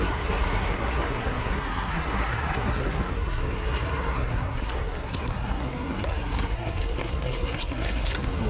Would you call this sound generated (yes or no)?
yes